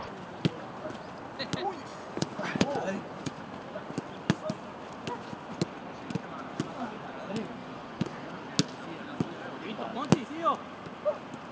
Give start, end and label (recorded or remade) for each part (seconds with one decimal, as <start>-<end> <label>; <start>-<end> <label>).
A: 0.0-1.9 recorded; 1.9-3.4 remade; 3.4-7.6 recorded; 7.6-8.3 remade; 8.3-11.5 recorded